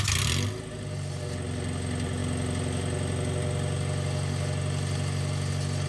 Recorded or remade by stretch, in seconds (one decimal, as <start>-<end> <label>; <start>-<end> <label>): 0.0-5.9 recorded